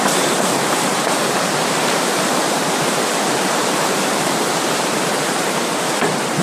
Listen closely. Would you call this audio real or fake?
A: fake